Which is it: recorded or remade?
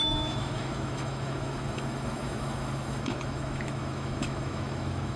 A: remade